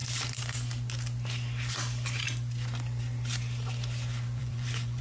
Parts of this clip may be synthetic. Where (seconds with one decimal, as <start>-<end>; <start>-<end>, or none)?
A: 4.4-5.0

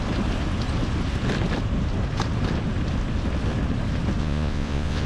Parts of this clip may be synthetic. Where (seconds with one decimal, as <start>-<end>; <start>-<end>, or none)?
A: 4.2-5.1

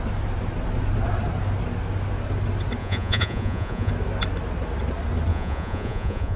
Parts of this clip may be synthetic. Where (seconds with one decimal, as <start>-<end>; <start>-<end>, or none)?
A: 2.8-3.9; 5.3-6.4

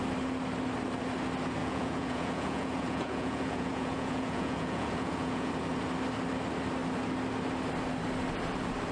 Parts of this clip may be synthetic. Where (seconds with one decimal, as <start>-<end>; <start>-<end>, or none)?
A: 1.6-5.5

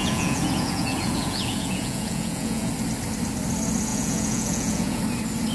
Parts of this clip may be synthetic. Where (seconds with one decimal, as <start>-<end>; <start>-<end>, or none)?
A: 0.0-2.7; 3.9-5.0

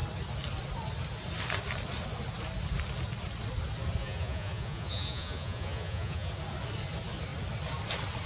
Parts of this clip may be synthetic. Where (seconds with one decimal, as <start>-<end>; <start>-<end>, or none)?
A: 4.0-6.3

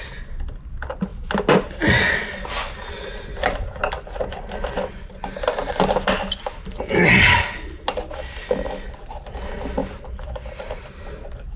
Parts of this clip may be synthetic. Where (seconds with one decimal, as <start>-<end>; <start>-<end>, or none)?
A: none

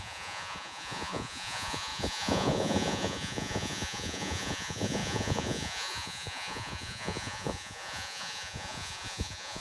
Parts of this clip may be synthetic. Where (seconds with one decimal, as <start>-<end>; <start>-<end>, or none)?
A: 0.0-9.6